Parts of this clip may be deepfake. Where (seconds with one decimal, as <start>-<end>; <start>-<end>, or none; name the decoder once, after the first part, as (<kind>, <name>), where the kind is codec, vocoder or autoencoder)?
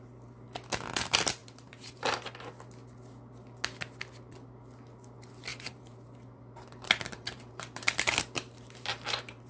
1.4-2.1 (vocoder, BigVGAN v2); 5.5-9.5